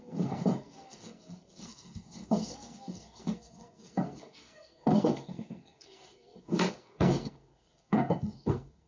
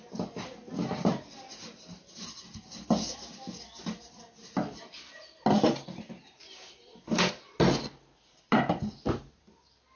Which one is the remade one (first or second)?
first